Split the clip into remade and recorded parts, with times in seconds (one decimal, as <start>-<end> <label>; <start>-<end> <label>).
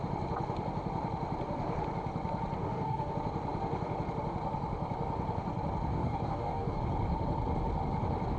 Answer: 0.0-2.6 recorded; 2.6-3.1 remade; 3.1-5.9 recorded; 5.9-6.8 remade; 6.8-8.4 recorded